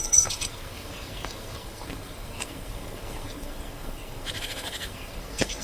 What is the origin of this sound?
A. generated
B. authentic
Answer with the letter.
A